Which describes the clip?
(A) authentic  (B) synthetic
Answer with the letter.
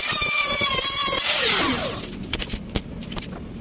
A